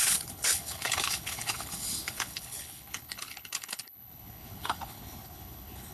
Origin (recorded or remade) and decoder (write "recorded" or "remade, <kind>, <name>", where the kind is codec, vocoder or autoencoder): remade, codec, HILCodec